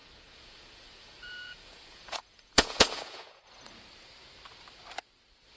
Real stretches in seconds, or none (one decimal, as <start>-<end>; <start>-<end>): 3.4-5.6